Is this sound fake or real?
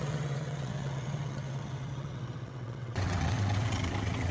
fake